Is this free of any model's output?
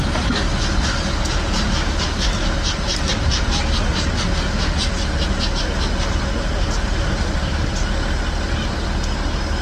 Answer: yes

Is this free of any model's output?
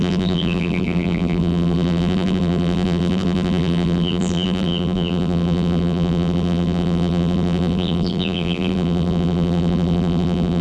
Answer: no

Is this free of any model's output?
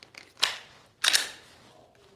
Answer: yes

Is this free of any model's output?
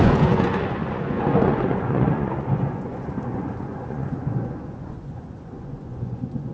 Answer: no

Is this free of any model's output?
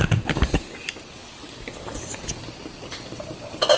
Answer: yes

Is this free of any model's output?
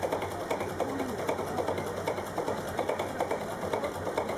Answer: no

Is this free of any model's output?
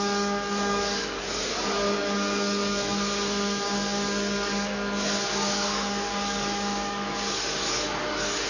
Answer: no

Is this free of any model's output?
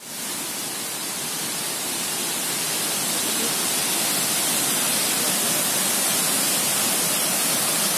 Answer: yes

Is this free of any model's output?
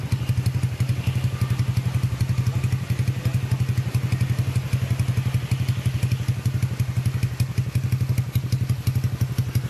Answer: yes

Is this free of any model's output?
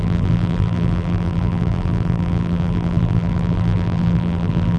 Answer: no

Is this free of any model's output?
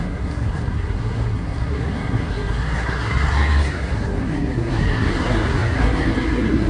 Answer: no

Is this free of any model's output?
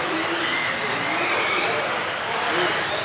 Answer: yes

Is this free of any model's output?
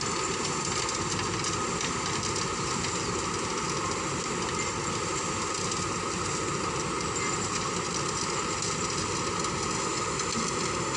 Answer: yes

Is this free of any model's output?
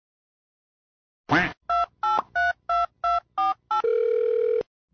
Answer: yes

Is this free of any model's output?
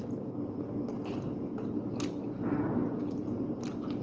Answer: yes